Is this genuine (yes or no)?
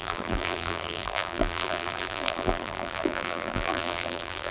no